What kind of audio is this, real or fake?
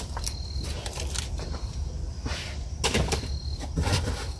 real